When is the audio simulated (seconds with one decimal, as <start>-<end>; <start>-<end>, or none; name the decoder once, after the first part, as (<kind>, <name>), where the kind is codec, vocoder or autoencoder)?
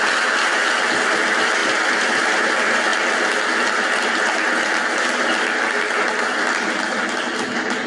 none